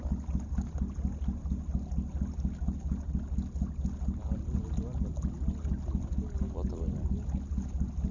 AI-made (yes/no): no